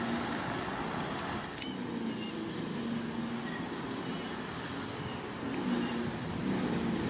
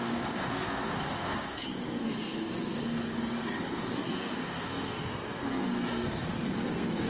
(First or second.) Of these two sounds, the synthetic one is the second